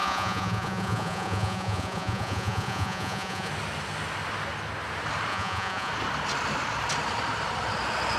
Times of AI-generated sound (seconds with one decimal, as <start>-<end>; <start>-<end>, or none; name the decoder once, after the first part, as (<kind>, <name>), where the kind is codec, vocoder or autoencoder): 0.0-3.5 (vocoder, Vocos); 5.3-5.9